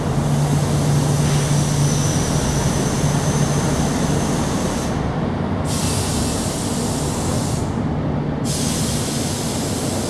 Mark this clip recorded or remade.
recorded